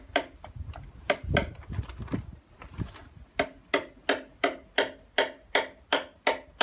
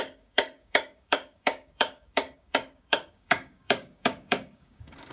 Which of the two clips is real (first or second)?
first